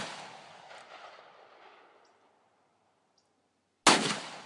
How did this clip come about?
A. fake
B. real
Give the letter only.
B